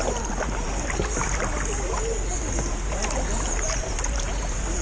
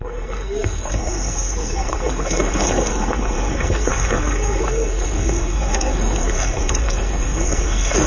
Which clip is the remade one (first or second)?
second